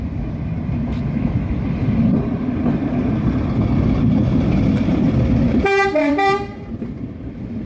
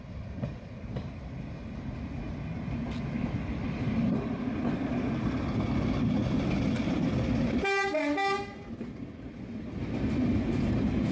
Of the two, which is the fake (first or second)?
first